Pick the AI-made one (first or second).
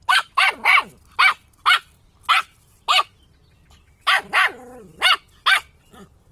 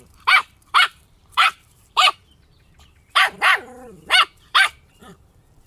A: second